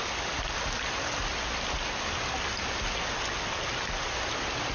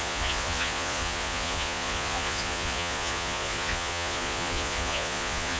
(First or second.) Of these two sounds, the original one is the first